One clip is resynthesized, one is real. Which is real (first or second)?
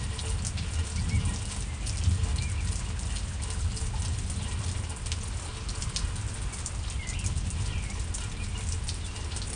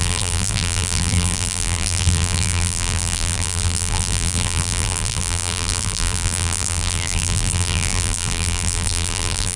first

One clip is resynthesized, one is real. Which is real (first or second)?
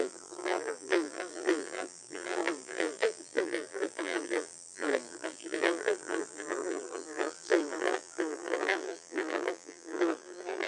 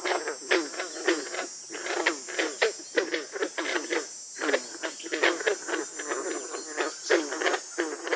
second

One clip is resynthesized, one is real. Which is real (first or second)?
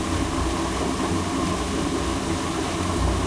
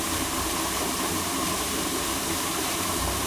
first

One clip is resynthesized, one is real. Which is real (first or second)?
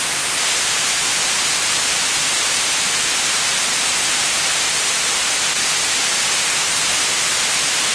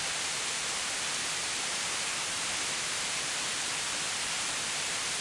first